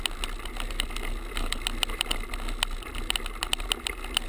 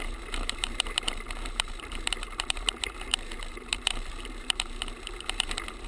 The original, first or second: first